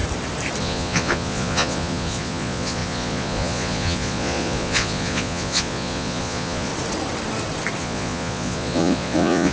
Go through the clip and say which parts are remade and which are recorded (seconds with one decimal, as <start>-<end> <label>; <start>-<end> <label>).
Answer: 0.0-0.6 recorded; 0.6-6.7 remade; 6.7-7.8 recorded; 7.8-9.5 remade